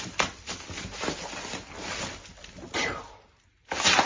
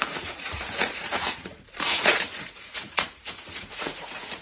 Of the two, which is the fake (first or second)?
second